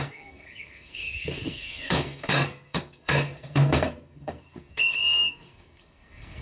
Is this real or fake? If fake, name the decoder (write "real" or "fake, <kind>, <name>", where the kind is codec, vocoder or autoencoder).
fake, codec, SNAC